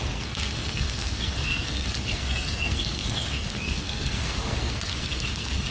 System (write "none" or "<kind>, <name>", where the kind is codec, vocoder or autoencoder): codec, SNAC